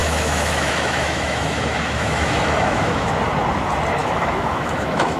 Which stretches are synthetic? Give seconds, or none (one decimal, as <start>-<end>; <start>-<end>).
0.0-3.1; 4.0-5.2